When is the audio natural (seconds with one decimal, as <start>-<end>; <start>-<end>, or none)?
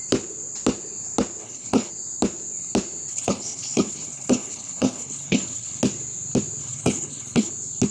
0.0-1.4; 1.9-3.1; 5.8-6.6; 7.5-7.9